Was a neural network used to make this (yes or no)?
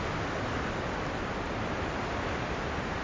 no